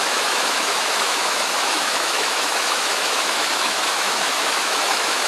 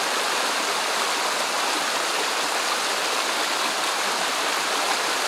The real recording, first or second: second